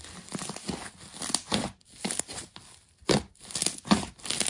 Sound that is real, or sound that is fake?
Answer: real